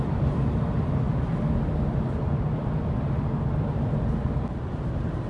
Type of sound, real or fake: real